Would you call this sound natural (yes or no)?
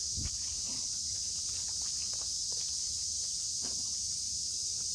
no